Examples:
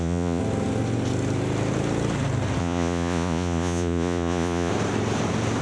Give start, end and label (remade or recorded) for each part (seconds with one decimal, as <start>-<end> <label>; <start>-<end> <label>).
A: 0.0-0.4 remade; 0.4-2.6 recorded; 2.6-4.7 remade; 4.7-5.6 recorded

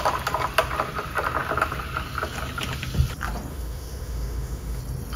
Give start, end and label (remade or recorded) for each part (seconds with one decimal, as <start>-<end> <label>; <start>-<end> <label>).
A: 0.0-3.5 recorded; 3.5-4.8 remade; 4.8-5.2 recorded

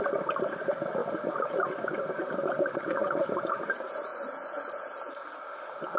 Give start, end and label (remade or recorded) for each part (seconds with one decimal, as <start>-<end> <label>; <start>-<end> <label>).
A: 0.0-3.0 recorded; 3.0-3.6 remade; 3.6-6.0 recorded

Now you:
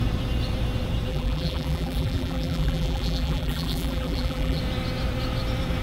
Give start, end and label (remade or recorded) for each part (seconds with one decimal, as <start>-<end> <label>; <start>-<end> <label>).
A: 0.0-1.1 recorded; 1.1-4.6 remade; 4.6-5.8 recorded